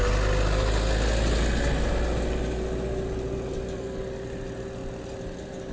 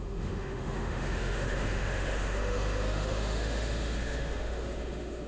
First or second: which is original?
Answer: first